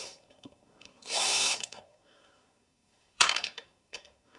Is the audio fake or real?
fake